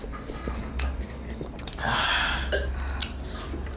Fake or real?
real